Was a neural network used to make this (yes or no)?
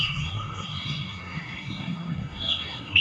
yes